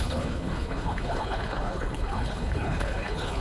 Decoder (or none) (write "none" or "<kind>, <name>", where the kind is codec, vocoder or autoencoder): codec, HILCodec